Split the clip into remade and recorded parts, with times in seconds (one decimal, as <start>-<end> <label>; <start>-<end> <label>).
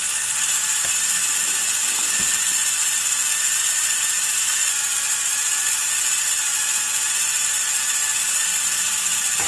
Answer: 0.0-0.5 recorded; 0.5-4.5 remade; 4.5-9.5 recorded